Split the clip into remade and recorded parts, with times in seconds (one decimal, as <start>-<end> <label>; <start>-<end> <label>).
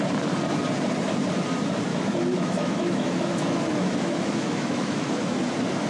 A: 0.0-1.9 recorded; 1.9-5.4 remade; 5.4-5.9 recorded